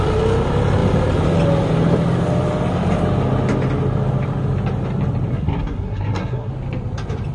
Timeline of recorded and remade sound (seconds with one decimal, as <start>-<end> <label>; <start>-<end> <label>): 0.0-5.3 recorded; 5.3-6.5 remade; 6.5-7.3 recorded